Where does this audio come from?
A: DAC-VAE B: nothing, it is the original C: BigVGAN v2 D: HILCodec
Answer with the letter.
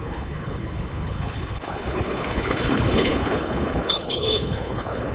D